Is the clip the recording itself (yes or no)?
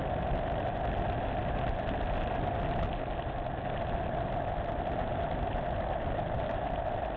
yes